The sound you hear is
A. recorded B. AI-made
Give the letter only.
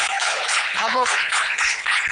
B